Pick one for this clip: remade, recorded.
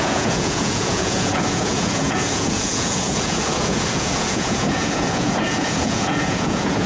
remade